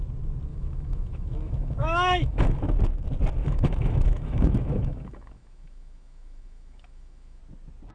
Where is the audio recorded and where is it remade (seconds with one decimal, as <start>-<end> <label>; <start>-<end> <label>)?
0.0-0.5 recorded; 0.5-2.6 remade; 2.6-3.4 recorded; 3.4-7.4 remade; 7.4-7.9 recorded